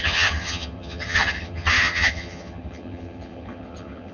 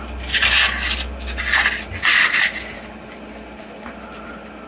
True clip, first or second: second